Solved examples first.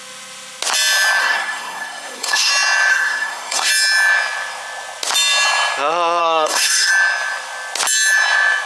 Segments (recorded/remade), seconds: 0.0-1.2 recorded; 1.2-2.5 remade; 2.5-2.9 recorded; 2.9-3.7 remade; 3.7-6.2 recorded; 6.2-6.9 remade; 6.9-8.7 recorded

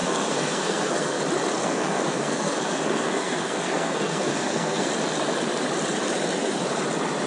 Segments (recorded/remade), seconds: 0.0-1.2 remade; 1.2-1.6 recorded; 1.6-4.9 remade; 4.9-7.3 recorded

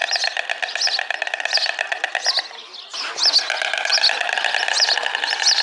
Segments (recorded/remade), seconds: 0.0-5.6 recorded

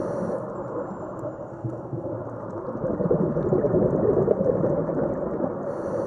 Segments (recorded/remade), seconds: 0.0-1.5 recorded; 1.5-2.1 remade; 2.1-6.1 recorded

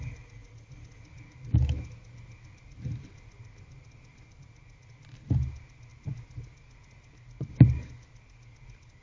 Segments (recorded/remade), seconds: 0.0-9.0 recorded

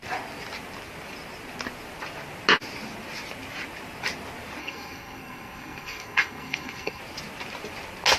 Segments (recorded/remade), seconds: 0.0-4.6 recorded; 4.6-7.0 remade; 7.0-8.2 recorded